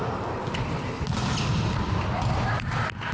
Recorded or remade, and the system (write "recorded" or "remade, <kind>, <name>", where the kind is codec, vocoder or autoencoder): recorded